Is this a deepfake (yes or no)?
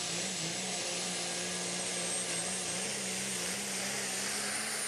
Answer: no